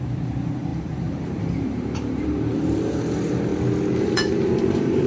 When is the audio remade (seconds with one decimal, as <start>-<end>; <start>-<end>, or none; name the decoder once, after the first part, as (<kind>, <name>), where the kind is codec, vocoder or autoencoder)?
0.0-3.5 (vocoder, BigVGAN v2); 4.0-5.1